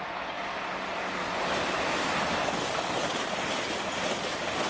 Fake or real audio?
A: real